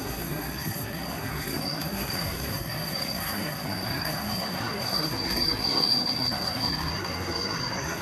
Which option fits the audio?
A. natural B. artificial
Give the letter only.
B